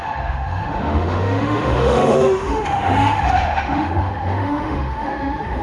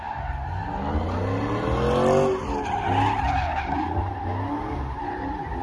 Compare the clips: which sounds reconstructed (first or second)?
first